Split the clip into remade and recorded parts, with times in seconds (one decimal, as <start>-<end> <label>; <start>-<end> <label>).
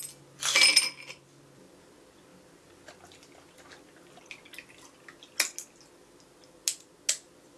0.0-7.6 recorded